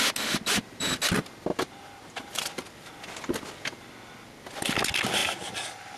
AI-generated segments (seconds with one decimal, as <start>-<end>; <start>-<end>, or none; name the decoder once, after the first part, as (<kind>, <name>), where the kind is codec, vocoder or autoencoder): 1.5-2.7 (vocoder, BigVGAN v2); 5.2-6.0

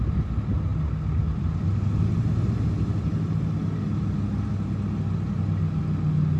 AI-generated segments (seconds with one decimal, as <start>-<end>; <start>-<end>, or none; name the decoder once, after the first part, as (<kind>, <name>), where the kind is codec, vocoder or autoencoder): none

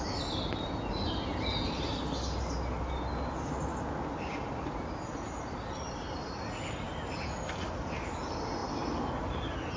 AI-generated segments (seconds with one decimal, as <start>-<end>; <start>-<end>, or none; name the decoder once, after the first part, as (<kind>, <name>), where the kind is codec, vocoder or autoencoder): none

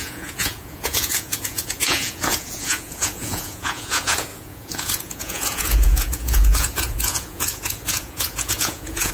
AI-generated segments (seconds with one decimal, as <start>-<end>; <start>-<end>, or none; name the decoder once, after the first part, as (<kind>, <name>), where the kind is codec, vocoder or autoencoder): 0.0-9.1 (vocoder, Vocos)

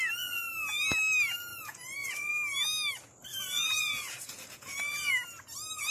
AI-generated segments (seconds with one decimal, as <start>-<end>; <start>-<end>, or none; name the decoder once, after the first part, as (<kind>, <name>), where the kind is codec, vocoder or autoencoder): 1.5-2.3 (vocoder, Vocos); 3.3-5.1

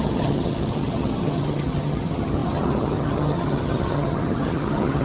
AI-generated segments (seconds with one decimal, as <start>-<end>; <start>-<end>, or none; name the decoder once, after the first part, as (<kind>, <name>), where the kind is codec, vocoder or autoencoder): 0.0-5.0 (vocoder, HiFi-GAN)

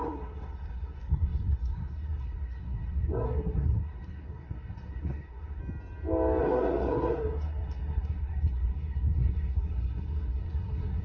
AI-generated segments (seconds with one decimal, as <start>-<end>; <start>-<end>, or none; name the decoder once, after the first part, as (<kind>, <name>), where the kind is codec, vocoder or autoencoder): 0.0-5.6 (codec, SNAC); 6.4-11.0